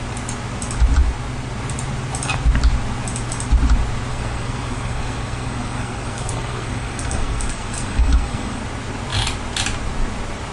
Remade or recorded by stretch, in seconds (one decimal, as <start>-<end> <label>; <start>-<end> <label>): 0.0-4.1 recorded; 4.1-8.6 remade; 8.6-10.5 recorded